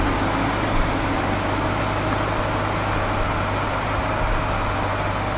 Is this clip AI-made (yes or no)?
no